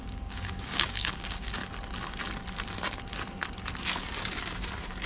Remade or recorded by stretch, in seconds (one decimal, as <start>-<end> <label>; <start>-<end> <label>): 0.0-1.6 remade; 1.6-5.1 recorded

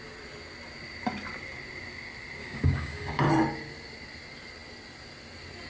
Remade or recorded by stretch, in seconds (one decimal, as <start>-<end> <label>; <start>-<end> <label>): 0.0-2.4 recorded; 2.4-3.2 remade; 3.2-5.7 recorded

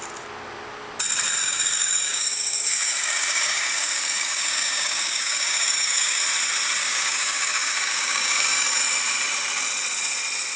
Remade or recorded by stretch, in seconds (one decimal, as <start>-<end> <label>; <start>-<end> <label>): 0.0-1.4 recorded; 1.4-6.2 remade; 6.2-6.8 recorded; 6.8-8.8 remade; 8.8-10.6 recorded

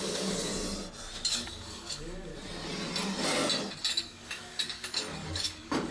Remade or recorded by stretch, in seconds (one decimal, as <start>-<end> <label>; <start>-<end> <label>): 0.0-0.5 remade; 0.5-1.3 recorded; 1.3-2.3 remade; 2.3-3.9 recorded; 3.9-5.9 remade

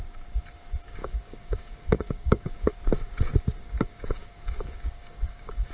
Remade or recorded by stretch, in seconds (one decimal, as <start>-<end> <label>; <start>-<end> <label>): 0.0-1.0 recorded; 1.0-2.7 remade; 2.7-3.6 recorded; 3.6-5.7 remade

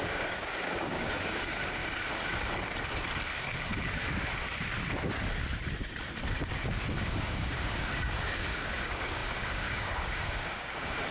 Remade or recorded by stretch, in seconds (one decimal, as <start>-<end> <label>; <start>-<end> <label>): 0.0-1.8 remade; 1.8-6.9 recorded; 6.9-11.1 remade

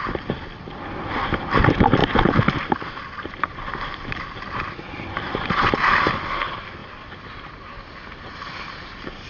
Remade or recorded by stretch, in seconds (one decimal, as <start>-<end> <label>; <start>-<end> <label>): 0.0-9.3 recorded

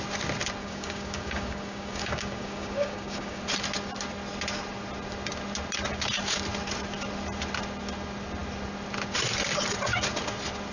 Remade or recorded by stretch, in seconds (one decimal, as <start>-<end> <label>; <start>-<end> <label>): 0.0-0.6 recorded; 0.6-3.4 remade; 3.4-10.7 recorded